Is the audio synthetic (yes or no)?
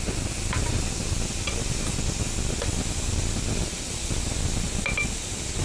no